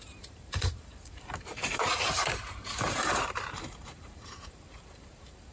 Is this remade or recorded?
remade